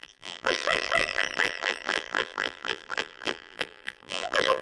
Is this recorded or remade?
remade